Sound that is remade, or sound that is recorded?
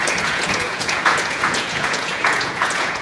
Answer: remade